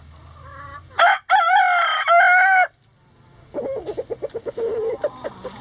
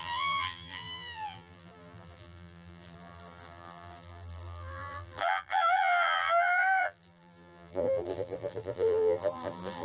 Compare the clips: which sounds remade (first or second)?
second